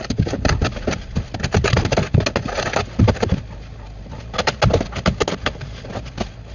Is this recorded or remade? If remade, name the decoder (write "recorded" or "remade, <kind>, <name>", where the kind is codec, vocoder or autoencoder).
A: recorded